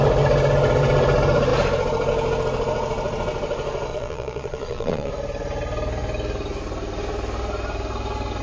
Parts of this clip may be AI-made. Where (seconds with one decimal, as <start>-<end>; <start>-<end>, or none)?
3.9-5.1